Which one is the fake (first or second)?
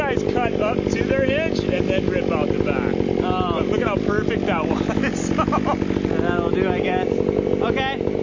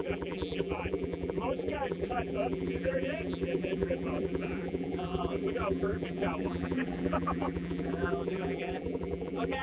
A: second